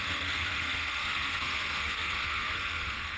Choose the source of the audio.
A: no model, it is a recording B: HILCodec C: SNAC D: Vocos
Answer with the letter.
C